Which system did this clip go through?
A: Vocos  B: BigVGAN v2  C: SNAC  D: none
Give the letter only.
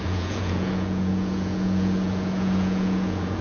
A